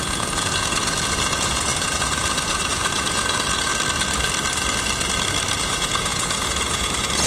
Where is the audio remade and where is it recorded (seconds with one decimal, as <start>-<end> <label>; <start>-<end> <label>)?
0.0-3.7 remade; 3.7-5.6 recorded; 5.6-7.3 remade